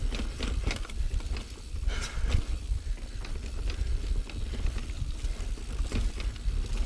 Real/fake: real